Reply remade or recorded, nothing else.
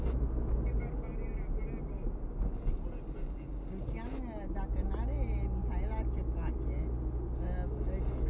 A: recorded